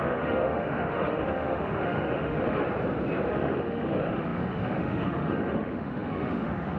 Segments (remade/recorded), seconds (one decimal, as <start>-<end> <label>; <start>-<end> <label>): 0.0-2.6 remade; 2.6-3.3 recorded; 3.3-6.8 remade